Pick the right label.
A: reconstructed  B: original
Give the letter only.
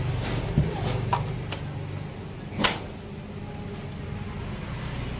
B